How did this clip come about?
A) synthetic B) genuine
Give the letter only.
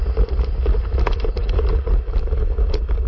B